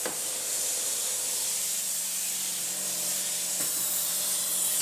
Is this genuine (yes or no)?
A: no